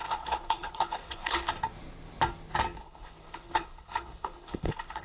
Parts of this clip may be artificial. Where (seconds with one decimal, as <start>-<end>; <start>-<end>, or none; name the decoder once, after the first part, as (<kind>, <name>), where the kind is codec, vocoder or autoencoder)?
0.0-1.5 (codec, HILCodec); 2.8-5.0